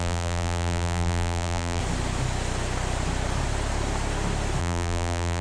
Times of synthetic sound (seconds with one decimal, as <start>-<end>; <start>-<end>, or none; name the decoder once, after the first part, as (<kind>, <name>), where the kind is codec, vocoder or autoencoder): 0.0-1.8 (vocoder, BigVGAN v2); 4.6-5.4

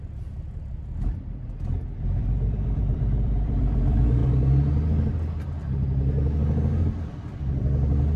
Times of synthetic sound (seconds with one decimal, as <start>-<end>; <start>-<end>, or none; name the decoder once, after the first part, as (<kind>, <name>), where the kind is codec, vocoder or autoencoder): 0.0-4.2 (vocoder, BigVGAN v2); 7.0-8.2